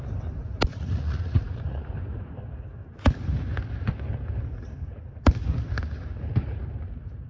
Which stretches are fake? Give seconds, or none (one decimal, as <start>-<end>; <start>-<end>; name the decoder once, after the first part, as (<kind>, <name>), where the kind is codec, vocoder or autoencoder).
0.7-1.9 (vocoder, Vocos)